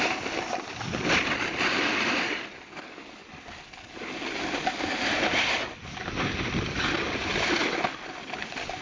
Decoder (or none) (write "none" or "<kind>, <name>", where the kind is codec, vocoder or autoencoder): none